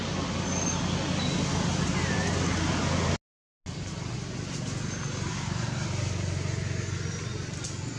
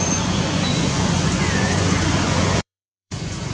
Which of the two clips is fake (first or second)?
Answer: second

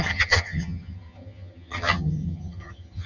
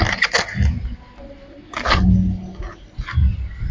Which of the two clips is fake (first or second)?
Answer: first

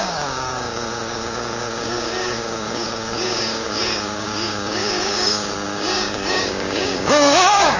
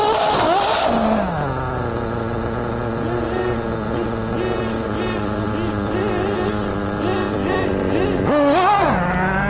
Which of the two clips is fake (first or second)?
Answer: first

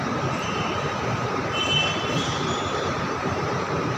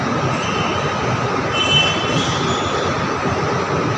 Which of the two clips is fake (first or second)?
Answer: first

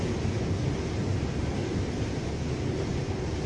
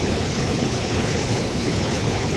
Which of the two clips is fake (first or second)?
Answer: second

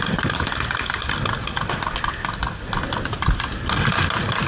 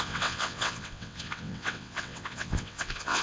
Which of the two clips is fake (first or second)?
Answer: second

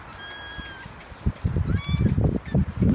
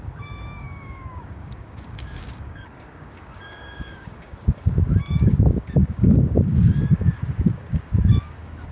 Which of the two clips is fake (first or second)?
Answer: second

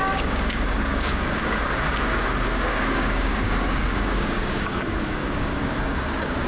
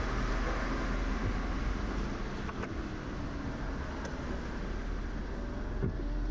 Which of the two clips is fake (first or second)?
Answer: first